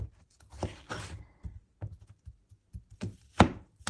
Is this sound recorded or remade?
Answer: recorded